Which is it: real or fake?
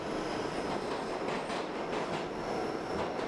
real